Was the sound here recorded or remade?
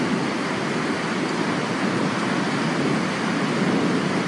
recorded